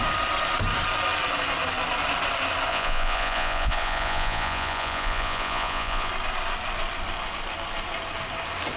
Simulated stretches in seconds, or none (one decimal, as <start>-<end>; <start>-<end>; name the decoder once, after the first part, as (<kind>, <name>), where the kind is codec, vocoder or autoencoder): 2.7-6.1 (vocoder, Vocos)